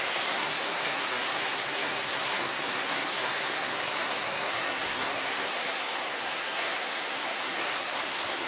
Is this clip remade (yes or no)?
yes